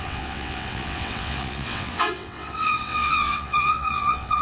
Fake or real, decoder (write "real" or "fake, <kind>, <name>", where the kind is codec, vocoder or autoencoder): fake, vocoder, WaveNeXt